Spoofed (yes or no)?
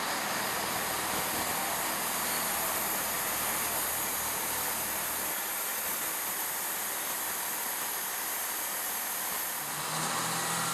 no